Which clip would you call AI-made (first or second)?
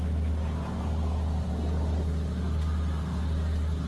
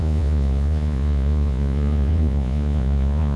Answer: second